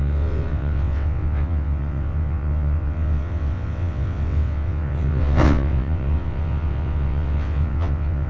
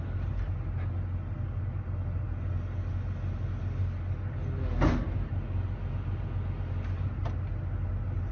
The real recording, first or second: second